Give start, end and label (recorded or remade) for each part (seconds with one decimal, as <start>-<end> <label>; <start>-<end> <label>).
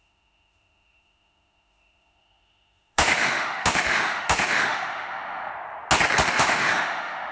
0.0-5.5 remade; 5.5-6.3 recorded; 6.3-7.3 remade